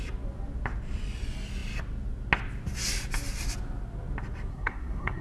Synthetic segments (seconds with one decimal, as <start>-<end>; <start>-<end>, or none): 4.5-5.2